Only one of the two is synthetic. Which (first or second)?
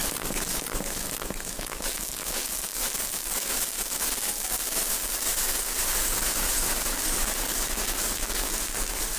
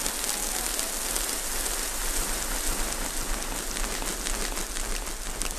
first